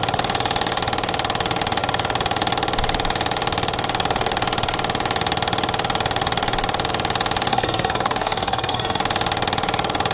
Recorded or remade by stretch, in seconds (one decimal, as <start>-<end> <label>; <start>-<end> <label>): 0.0-7.5 recorded; 7.5-9.0 remade; 9.0-10.1 recorded